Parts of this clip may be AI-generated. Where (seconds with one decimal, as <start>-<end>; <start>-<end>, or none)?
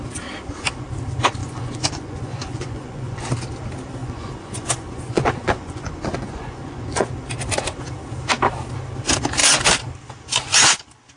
1.4-3.3; 4.0-7.1